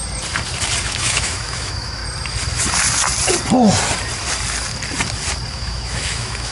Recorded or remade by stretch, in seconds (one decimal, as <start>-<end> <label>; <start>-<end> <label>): 0.0-0.8 recorded; 0.8-2.0 remade; 2.0-5.5 recorded; 5.5-6.5 remade